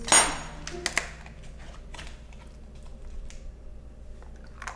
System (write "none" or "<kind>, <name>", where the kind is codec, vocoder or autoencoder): none